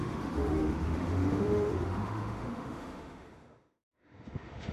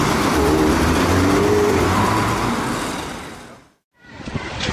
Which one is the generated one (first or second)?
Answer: first